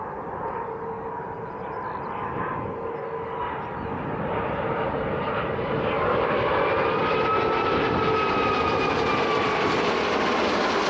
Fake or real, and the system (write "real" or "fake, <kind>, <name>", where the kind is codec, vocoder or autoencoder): real